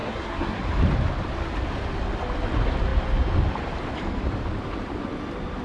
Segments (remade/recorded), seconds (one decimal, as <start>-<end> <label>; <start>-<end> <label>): 0.0-0.6 remade; 0.6-5.6 recorded